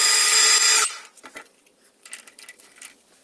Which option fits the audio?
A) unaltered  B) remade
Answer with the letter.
A